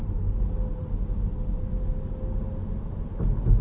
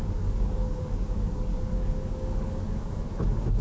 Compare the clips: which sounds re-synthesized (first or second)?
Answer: second